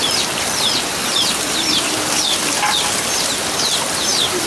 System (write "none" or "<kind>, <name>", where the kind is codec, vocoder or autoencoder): none